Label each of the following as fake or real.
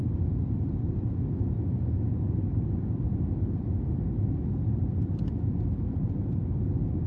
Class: real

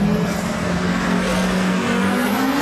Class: fake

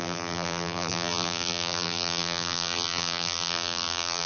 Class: fake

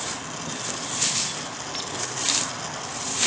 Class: real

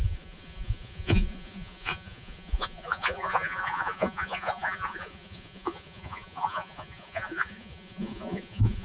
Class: fake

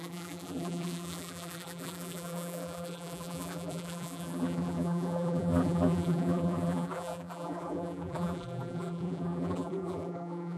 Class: fake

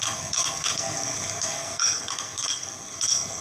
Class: fake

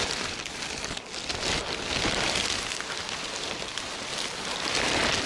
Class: real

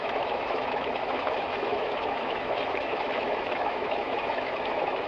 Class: fake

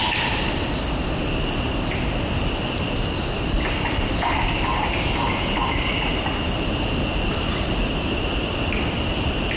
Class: real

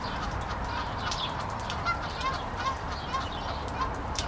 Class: fake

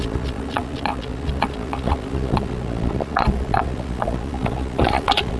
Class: fake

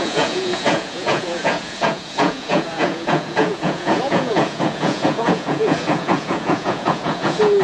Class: fake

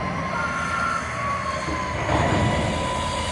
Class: real